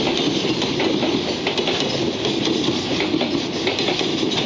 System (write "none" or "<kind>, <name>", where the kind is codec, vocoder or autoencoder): none